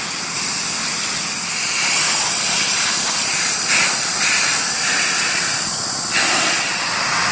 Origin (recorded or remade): recorded